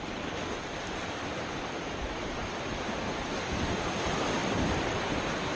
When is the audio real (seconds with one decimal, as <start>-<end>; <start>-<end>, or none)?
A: 0.0-5.6